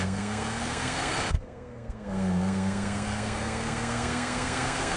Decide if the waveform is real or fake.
fake